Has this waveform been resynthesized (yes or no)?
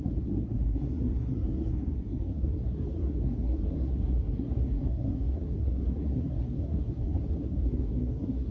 yes